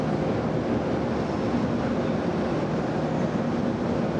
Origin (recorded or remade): recorded